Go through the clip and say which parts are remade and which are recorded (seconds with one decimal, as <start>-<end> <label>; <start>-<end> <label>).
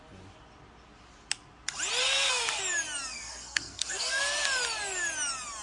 0.0-2.0 recorded; 2.0-2.6 remade; 2.6-3.1 recorded; 3.1-4.2 remade; 4.2-5.6 recorded